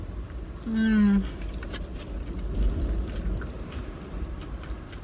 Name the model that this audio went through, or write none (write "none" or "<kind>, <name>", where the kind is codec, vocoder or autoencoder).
none